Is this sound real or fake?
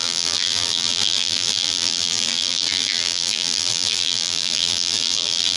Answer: fake